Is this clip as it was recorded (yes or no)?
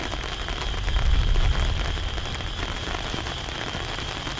yes